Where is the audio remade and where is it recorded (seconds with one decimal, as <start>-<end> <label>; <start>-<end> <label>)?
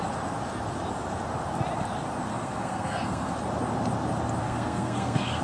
0.0-2.3 recorded; 2.3-3.3 remade; 3.3-4.4 recorded; 4.4-5.4 remade